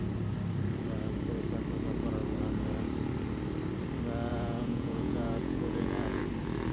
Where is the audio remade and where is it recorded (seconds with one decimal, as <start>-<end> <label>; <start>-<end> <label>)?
0.0-4.3 recorded; 4.3-6.2 remade; 6.2-6.7 recorded